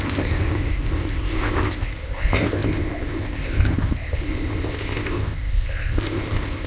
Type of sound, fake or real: fake